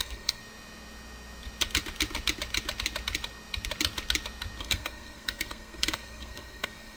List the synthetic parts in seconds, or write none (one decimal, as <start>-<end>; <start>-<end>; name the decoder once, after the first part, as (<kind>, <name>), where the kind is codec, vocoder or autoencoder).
0.0-0.4 (codec, SNAC); 4.6-7.0